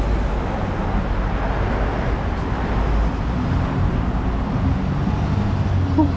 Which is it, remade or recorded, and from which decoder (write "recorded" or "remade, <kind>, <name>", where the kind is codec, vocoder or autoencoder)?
recorded